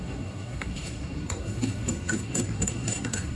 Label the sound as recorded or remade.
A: remade